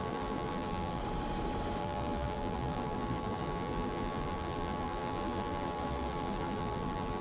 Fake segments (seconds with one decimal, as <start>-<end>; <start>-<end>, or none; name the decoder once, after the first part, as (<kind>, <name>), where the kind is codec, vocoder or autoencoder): 0.0-1.0 (vocoder, BigVGAN v2); 1.8-7.2

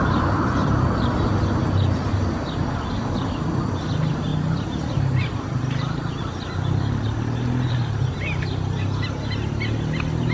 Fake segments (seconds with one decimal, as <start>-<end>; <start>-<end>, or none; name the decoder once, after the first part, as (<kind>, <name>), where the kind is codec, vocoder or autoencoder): none

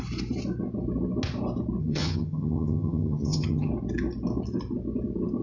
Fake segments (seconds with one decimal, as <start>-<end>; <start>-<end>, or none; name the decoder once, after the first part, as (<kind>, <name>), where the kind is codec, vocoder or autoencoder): 1.8-3.7 (vocoder, HiFi-GAN)

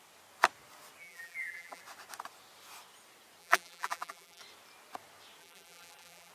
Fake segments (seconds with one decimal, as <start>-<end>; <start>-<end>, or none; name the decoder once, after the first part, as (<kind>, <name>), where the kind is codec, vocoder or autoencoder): 1.0-1.8 (vocoder, BigVGAN v2); 3.4-4.4; 5.4-6.3

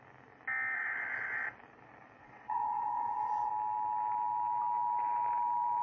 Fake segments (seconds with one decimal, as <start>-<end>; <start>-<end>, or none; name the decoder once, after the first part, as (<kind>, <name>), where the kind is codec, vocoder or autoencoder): 2.2-3.5 (vocoder, WaveNeXt)

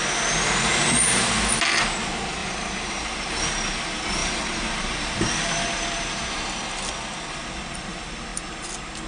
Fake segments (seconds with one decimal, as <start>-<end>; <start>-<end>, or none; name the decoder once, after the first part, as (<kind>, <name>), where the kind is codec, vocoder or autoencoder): 2.4-3.5 (vocoder, BigVGAN v2); 4.2-6.4

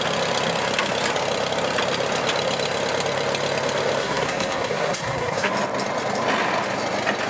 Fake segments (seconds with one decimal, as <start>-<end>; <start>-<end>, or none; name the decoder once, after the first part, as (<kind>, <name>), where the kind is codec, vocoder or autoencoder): 4.0-5.5 (codec, SNAC)

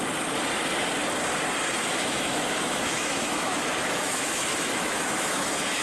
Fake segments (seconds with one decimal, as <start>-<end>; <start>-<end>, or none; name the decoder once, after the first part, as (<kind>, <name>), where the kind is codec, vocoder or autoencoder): 1.9-5.8 (autoencoder, DAC-VAE)